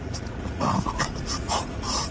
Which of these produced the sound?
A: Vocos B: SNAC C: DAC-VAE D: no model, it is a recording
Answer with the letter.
A